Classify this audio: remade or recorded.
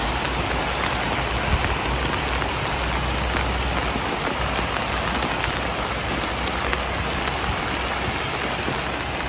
recorded